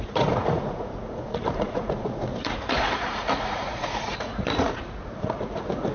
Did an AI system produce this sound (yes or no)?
yes